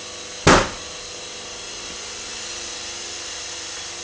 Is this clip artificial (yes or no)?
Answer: no